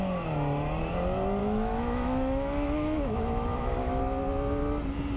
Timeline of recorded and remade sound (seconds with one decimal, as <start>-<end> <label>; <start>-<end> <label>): 0.0-1.4 recorded; 1.4-4.0 remade; 4.0-5.2 recorded